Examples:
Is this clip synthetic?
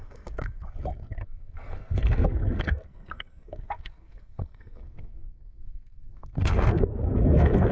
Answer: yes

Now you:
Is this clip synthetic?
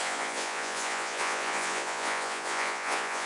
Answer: yes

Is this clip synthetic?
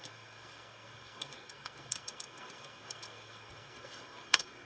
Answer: yes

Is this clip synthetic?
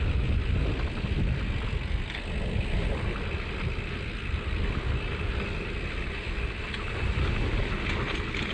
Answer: no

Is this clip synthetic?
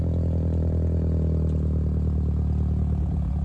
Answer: no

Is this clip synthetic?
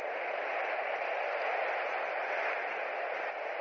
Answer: no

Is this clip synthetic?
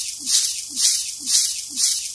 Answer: no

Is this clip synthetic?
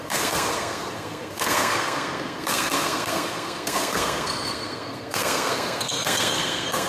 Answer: yes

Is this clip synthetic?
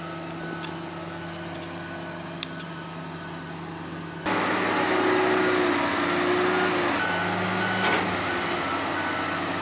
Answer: no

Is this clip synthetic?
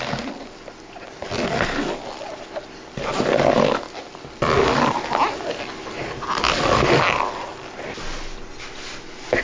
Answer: no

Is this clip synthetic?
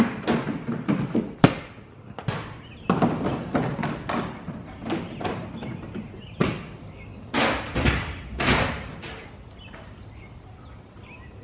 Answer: no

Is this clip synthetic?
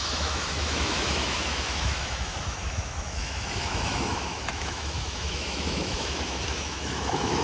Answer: yes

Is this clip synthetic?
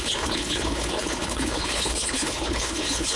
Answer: yes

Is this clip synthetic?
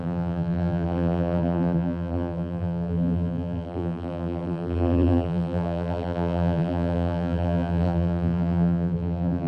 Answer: yes